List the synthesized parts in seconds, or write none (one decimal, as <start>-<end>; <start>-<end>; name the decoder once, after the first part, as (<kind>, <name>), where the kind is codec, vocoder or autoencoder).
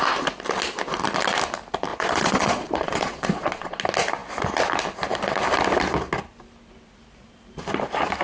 1.9-3.8 (vocoder, Vocos)